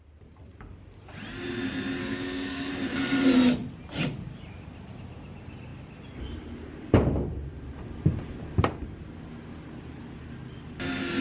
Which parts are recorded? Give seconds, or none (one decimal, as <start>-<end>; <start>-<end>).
0.0-2.0; 2.7-11.2